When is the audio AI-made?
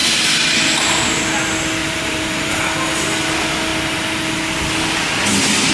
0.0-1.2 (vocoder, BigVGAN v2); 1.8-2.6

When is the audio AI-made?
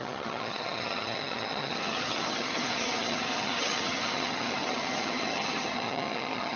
0.0-6.6 (vocoder, HiFi-GAN)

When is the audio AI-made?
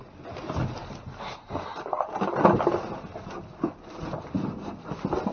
none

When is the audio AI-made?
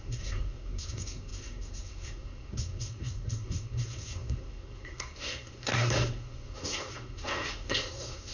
0.0-8.3 (codec, SNAC)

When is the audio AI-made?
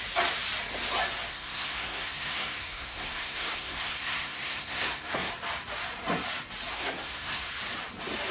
1.3-5.3 (codec, SNAC); 6.7-7.5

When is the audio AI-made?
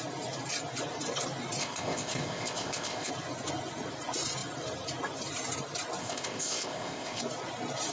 1.6-3.1 (codec, ZipCodec); 6.0-7.2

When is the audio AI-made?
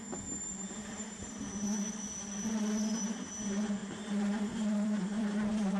0.8-1.4 (vocoder, BigVGAN v2); 3.8-5.8